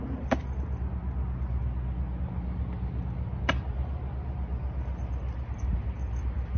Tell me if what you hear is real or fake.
real